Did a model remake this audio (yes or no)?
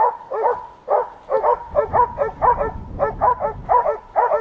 no